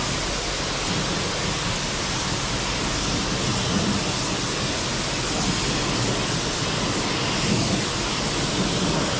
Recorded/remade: recorded